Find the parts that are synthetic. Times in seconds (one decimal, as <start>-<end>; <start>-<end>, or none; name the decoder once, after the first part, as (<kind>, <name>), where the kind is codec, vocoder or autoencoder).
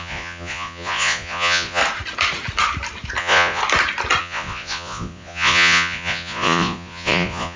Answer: 0.0-1.8 (vocoder, Vocos); 3.2-3.6; 4.2-7.6